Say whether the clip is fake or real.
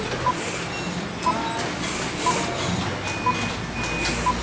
real